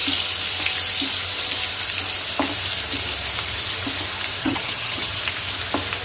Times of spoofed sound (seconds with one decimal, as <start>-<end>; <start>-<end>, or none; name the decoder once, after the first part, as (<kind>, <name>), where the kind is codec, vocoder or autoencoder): 4.4-5.2 (vocoder, HiFi-GAN)